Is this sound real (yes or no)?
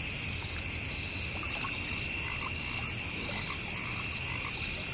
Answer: yes